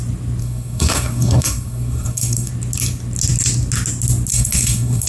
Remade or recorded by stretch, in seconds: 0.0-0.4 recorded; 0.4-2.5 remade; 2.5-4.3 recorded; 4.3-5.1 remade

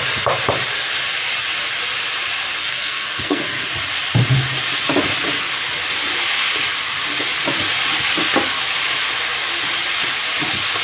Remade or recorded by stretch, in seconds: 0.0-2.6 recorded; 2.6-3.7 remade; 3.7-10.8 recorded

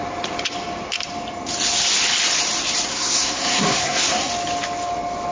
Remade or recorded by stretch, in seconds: 0.0-2.9 recorded; 2.9-4.3 remade; 4.3-5.3 recorded

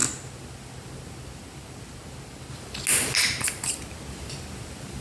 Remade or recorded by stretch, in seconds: 0.0-5.0 recorded